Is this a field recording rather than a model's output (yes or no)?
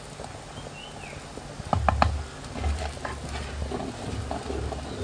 yes